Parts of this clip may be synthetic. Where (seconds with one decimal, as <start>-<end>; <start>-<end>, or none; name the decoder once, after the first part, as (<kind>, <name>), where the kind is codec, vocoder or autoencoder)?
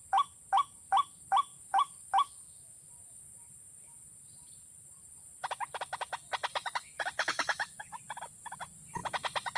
1.5-2.9 (autoencoder, DAC-VAE); 6.5-7.8